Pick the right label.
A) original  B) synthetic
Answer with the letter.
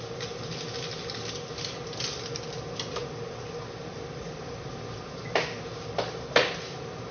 A